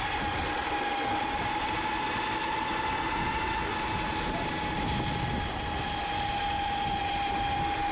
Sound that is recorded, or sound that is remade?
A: recorded